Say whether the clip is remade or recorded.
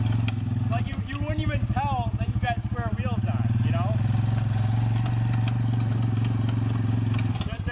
recorded